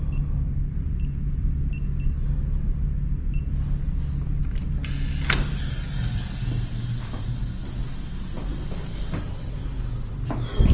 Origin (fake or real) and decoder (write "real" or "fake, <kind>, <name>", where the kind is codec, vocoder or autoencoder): real